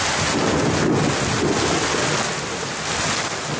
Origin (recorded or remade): recorded